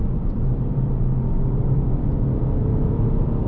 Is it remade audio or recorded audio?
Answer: remade